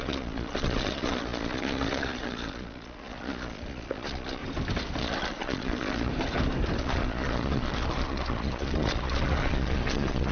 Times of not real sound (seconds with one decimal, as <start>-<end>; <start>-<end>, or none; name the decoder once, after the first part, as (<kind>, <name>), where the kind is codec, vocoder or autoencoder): 0.0-4.4 (vocoder, Vocos); 5.0-6.1; 6.8-10.3